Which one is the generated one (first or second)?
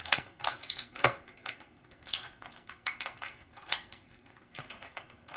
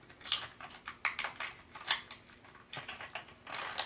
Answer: first